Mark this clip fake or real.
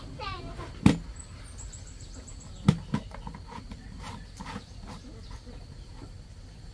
real